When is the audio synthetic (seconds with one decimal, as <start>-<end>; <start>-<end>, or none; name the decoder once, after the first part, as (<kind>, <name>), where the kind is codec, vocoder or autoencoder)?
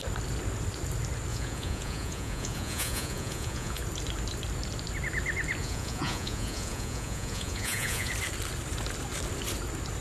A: 1.3-3.8 (vocoder, Vocos); 5.6-8.1